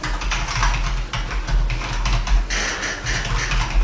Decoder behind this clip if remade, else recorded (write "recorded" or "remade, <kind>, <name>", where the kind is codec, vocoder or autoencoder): recorded